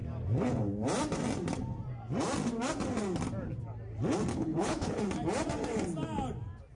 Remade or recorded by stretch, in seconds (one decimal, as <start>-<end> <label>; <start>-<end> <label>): 0.0-4.3 recorded; 4.3-5.0 remade; 5.0-6.7 recorded